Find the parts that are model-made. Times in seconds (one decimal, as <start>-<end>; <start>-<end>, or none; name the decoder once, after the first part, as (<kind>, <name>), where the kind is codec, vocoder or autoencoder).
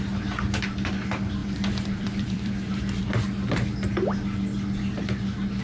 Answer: 1.4-3.0 (vocoder, BigVGAN v2)